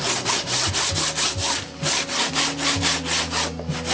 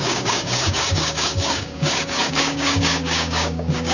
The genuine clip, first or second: first